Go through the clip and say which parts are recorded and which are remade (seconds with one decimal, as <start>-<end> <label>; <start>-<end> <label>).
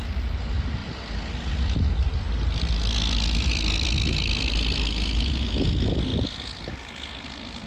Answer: 0.0-7.7 recorded